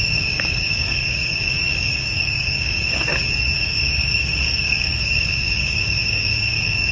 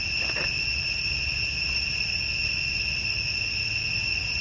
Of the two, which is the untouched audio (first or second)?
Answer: second